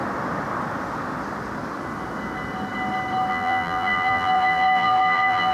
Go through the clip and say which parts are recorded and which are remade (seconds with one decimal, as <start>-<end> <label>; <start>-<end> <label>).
0.0-3.3 recorded; 3.3-5.5 remade